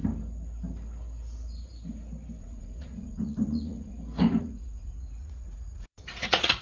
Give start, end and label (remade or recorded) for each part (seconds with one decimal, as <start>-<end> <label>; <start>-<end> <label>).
0.0-2.4 recorded; 2.4-3.9 remade; 3.9-4.4 recorded; 4.4-6.6 remade